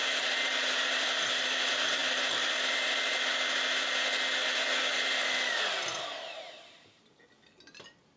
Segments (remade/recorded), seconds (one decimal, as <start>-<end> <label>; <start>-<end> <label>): 0.0-0.9 remade; 0.9-5.9 recorded; 5.9-7.2 remade; 7.2-8.2 recorded